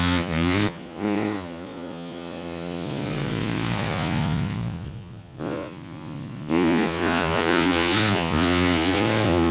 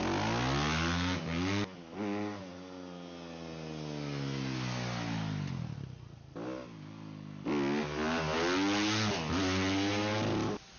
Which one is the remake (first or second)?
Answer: first